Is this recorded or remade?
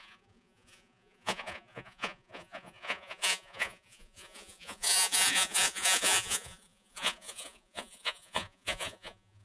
remade